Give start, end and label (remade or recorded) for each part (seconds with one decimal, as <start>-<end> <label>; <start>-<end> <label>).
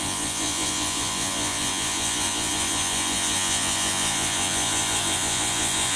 0.0-6.0 remade